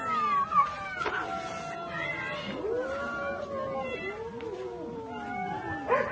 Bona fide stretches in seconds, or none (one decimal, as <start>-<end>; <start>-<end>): 0.0-6.1